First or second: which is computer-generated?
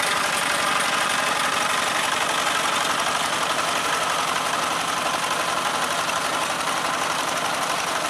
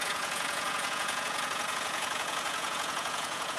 second